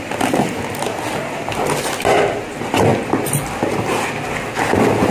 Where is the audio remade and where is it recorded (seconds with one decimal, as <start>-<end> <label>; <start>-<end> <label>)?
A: 0.0-5.1 recorded